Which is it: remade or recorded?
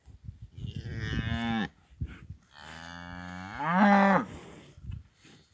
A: recorded